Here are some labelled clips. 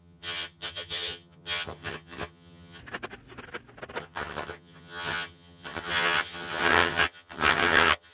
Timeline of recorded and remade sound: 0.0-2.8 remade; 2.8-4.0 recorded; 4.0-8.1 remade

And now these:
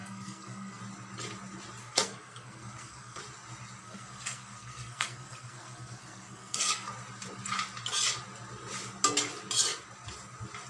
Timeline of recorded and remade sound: 0.0-0.8 remade; 0.8-1.8 recorded; 1.8-3.2 remade; 3.2-3.8 recorded; 3.8-6.9 remade; 6.9-10.7 recorded

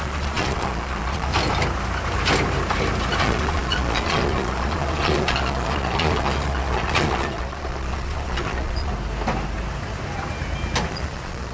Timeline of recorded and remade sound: 0.0-1.3 remade; 1.3-3.2 recorded; 3.2-8.9 remade; 8.9-10.9 recorded; 10.9-11.5 remade

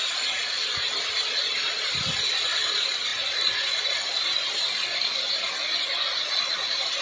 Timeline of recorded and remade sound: 0.0-7.0 recorded